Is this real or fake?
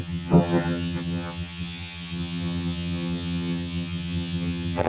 fake